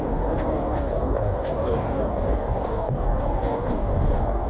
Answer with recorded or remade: remade